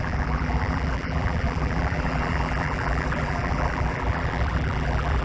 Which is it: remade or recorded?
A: remade